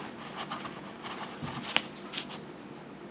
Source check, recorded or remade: recorded